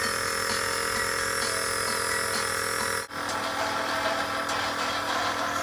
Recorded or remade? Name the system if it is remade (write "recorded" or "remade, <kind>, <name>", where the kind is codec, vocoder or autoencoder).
recorded